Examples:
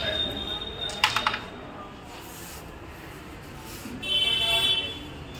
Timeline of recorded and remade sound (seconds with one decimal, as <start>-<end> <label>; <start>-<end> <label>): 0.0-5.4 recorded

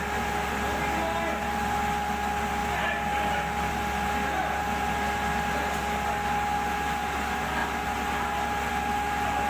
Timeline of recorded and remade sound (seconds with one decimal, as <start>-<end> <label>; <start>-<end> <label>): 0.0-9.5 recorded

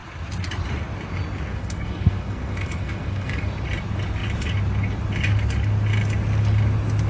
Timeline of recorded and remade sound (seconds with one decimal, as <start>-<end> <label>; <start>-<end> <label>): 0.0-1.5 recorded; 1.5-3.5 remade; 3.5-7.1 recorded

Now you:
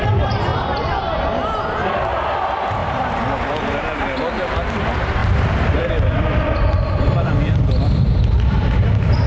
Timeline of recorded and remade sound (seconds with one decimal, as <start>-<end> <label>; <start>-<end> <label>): 0.0-0.5 recorded; 0.5-1.0 remade; 1.0-2.8 recorded; 2.8-3.8 remade; 3.8-5.2 recorded; 5.2-7.9 remade; 7.9-9.3 recorded